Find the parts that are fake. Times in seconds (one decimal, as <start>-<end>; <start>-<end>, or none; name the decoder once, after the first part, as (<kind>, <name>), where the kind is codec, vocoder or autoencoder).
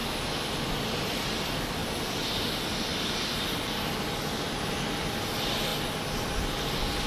1.8-2.3 (vocoder, BigVGAN v2)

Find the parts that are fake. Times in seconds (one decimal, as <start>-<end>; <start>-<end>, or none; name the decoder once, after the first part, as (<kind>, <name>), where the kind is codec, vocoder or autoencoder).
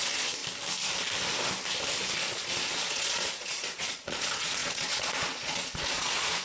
0.0-0.4 (vocoder, Vocos); 2.2-6.4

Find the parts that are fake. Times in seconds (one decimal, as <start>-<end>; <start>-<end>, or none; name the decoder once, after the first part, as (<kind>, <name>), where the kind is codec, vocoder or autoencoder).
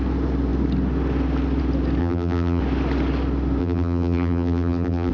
2.0-2.6 (vocoder, BigVGAN v2); 3.6-5.1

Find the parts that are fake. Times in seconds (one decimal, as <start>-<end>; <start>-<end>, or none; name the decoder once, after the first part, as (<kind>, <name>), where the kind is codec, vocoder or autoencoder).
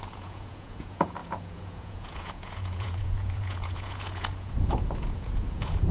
0.0-5.9 (vocoder, Vocos)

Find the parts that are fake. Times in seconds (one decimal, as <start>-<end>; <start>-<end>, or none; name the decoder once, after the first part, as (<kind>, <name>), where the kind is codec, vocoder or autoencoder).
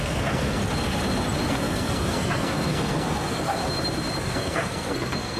0.0-0.6 (codec, SNAC); 1.5-3.6; 4.2-5.4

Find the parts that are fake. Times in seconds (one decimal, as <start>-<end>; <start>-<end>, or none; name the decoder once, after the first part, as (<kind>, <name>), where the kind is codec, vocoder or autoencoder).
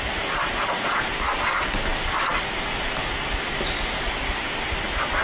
none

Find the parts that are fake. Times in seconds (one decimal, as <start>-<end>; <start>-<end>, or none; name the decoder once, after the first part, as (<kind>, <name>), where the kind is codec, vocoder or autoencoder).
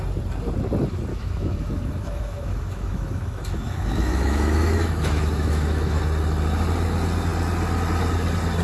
1.1-6.0 (autoencoder, DAC-VAE)